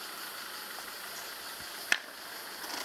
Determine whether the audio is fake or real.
real